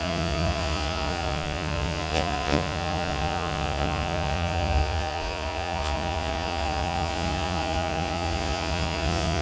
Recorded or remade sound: remade